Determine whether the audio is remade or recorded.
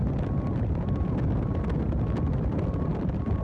recorded